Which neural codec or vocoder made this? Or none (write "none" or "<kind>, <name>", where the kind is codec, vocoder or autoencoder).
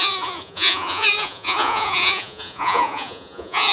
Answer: vocoder, Vocos